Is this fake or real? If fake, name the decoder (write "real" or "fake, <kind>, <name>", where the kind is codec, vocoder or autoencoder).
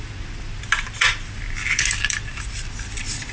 fake, vocoder, BigVGAN v2